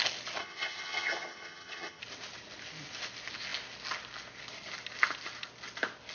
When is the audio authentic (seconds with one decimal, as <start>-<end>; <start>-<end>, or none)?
0.0-0.4; 2.0-6.1